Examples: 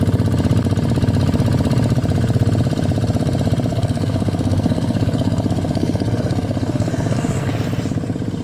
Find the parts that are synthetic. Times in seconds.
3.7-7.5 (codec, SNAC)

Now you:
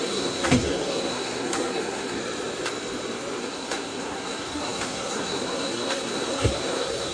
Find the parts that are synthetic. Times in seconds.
0.0-2.2 (codec, SNAC); 3.4-7.1

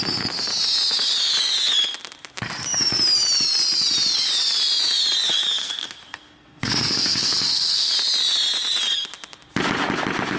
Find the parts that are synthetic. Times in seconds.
5.6-7.9 (codec, SNAC)

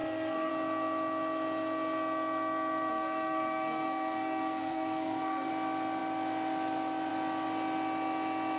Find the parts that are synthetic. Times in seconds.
0.0-0.5 (codec, SNAC); 2.9-5.5

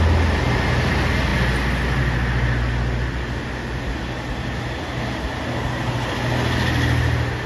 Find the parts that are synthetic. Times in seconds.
none

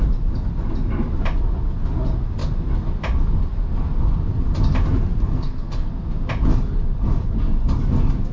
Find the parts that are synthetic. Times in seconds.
5.3-5.9 (codec, SNAC)

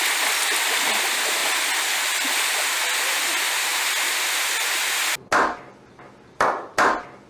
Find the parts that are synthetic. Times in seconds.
none

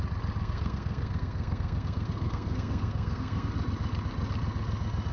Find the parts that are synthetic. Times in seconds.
0.4-3.5 (codec, SNAC)